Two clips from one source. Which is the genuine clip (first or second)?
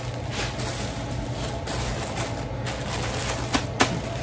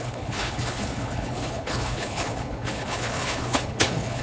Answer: first